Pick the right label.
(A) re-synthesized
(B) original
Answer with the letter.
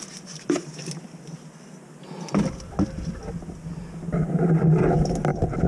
B